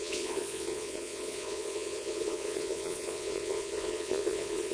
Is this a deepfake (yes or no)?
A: yes